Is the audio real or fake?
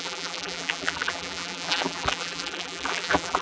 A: fake